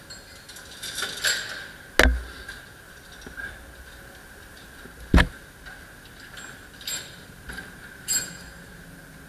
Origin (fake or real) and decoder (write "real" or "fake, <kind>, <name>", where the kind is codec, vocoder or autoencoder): real